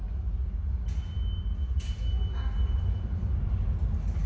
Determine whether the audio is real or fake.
real